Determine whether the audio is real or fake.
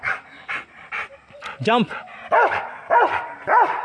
real